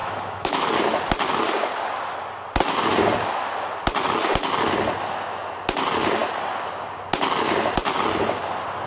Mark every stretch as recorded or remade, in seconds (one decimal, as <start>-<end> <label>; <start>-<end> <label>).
0.0-0.7 remade; 0.7-8.9 recorded